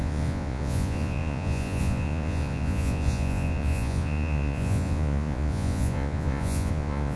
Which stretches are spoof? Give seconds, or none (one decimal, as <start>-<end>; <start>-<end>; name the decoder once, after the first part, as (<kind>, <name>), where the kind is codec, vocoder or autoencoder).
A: 0.0-7.2 (vocoder, Vocos)